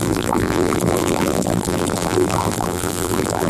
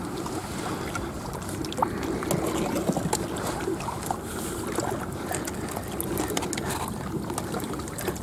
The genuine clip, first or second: second